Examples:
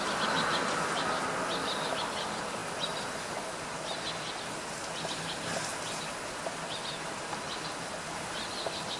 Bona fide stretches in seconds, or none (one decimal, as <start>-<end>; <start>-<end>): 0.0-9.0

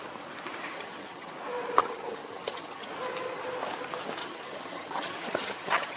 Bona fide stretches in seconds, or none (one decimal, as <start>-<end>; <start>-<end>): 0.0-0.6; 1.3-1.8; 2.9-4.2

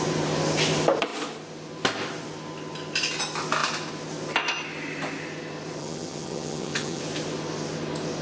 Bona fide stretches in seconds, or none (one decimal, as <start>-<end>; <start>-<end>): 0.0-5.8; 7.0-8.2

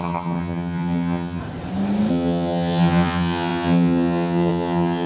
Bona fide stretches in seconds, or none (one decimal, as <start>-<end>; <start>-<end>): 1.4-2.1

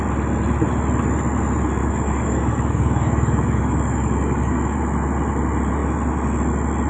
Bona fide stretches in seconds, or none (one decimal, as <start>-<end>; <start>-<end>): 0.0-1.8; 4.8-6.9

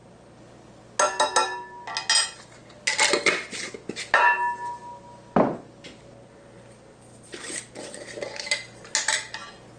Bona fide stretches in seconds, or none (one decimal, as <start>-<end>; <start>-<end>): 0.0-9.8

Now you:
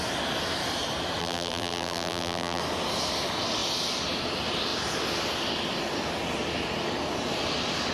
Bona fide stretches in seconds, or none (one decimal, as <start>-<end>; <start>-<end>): 0.0-1.2; 2.6-7.9